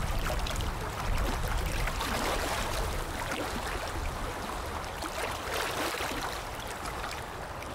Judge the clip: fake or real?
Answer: real